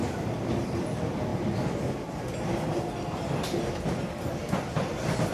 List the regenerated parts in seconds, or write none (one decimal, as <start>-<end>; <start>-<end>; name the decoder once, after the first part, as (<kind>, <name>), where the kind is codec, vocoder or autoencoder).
0.0-1.3 (vocoder, BigVGAN v2); 4.0-5.3

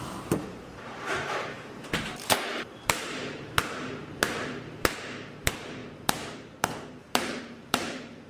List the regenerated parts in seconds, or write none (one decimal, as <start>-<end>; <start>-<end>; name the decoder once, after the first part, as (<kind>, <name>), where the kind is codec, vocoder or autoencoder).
0.0-8.3 (vocoder, BigVGAN v2)

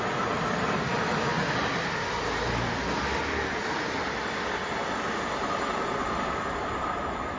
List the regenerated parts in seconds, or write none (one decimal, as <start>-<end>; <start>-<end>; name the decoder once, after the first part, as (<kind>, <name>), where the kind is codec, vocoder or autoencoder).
none